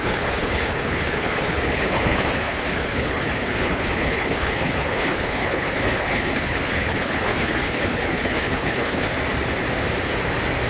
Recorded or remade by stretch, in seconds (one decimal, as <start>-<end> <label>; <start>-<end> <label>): 0.0-9.1 remade; 9.1-10.7 recorded